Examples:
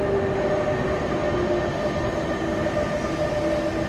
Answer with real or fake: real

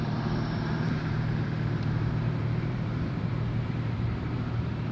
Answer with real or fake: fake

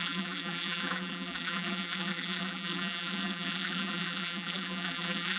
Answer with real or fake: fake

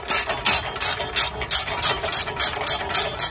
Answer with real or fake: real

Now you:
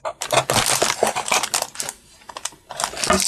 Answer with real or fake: real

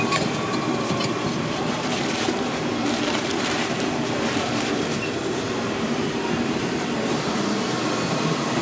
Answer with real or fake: fake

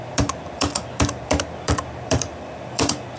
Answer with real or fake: fake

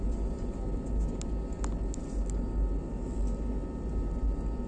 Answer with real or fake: real